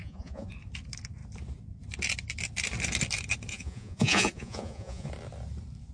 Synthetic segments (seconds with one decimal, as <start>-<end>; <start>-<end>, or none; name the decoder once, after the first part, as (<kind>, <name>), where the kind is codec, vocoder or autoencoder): 0.0-0.5 (vocoder, Vocos); 3.5-5.1